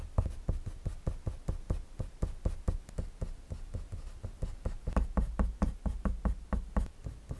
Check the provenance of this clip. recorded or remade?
recorded